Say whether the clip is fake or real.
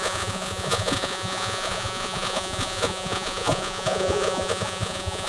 fake